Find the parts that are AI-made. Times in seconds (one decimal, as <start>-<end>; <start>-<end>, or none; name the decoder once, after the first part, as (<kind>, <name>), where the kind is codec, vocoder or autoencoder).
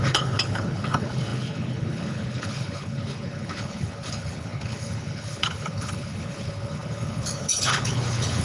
0.0-8.4 (codec, HILCodec)